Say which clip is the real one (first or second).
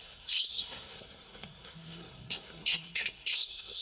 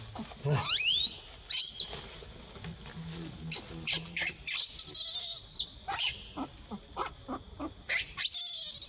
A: second